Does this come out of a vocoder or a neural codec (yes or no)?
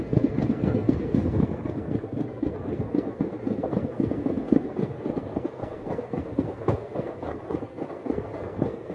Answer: yes